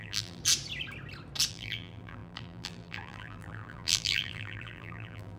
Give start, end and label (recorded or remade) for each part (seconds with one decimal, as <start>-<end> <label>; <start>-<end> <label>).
0.0-0.4 remade; 0.4-1.5 recorded; 1.5-5.4 remade